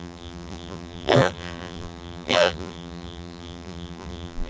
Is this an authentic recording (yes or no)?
no